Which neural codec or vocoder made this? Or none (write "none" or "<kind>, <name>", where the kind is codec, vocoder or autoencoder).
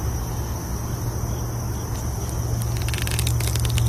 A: none